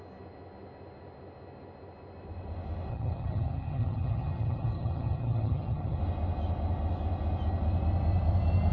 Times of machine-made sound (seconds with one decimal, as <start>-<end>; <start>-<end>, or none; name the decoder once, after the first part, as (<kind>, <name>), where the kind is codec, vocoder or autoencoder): 2.9-6.0 (vocoder, HiFi-GAN)

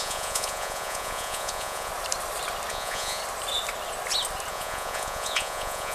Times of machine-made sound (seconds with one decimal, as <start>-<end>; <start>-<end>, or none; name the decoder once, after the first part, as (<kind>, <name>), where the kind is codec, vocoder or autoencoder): 0.0-1.9 (vocoder, Vocos); 2.7-3.2; 4.5-5.9

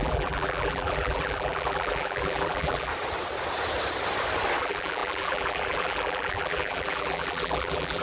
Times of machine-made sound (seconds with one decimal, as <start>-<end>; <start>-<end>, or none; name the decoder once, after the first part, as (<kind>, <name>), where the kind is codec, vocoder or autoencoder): 0.0-2.9 (vocoder, BigVGAN v2); 4.6-8.0

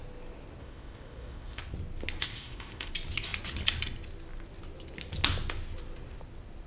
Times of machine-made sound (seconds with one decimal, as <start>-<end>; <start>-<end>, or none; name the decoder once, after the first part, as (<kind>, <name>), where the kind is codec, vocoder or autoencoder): 0.6-1.6 (codec, ZipCodec); 2.2-2.9

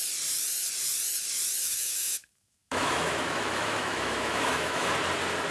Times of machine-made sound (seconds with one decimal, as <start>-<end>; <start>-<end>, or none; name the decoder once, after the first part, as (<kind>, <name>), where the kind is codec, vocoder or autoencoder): 1.6-4.9 (autoencoder, DAC-VAE)

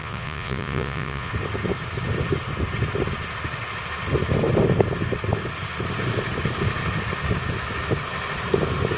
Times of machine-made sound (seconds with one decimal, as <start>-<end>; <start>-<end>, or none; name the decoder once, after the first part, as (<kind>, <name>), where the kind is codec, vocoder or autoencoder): 0.0-1.3 (vocoder, Vocos)

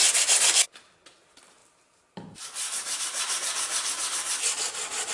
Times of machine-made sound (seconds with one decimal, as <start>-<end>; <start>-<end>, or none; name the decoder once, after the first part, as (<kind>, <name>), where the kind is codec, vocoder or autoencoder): 1.6-5.1 (vocoder, BigVGAN v2)